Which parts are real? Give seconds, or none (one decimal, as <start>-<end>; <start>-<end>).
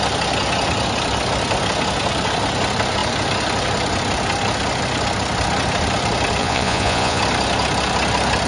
0.0-6.4; 7.2-8.5